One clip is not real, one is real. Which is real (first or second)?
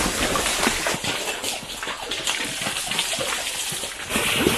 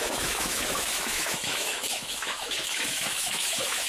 first